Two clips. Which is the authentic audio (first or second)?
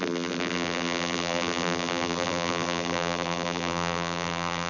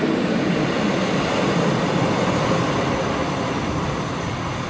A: second